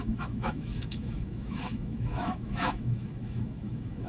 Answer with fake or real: fake